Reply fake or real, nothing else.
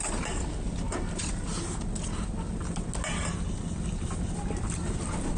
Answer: real